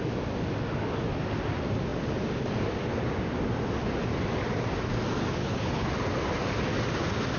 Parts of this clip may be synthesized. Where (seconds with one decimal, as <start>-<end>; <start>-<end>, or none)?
5.4-5.9